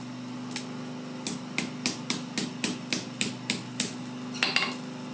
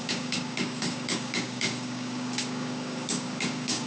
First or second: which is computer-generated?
second